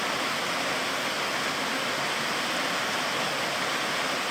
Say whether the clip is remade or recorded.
recorded